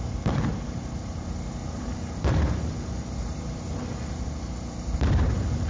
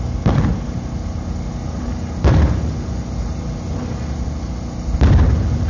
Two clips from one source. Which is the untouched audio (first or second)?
second